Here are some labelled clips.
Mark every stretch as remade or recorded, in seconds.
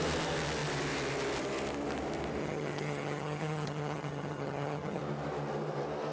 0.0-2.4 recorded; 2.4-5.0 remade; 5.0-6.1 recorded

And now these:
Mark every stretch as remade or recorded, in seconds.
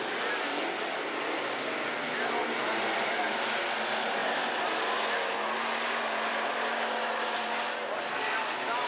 0.0-8.9 recorded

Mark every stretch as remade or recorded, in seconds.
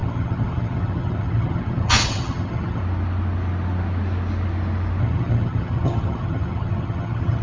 0.0-2.8 remade; 2.8-5.0 recorded; 5.0-7.4 remade